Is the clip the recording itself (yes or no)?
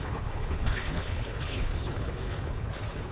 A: no